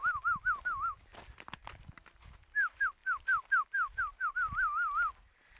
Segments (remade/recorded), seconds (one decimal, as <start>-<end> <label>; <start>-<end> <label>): 0.0-5.6 recorded

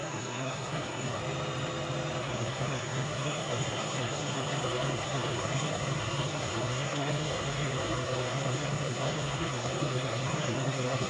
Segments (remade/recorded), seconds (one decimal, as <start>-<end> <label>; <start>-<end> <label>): 0.0-1.2 remade; 1.2-2.2 recorded; 2.2-11.1 remade

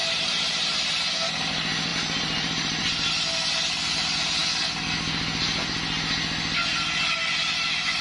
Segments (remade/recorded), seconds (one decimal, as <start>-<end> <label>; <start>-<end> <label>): 0.0-1.3 remade; 1.3-1.9 recorded; 1.9-3.1 remade; 3.1-8.0 recorded

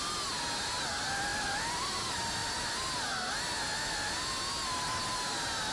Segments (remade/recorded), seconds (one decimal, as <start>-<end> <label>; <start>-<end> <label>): 0.0-5.7 recorded

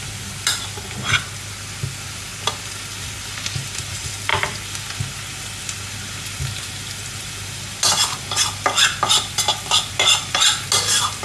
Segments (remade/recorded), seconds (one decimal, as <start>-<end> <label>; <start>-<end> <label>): 0.0-11.2 recorded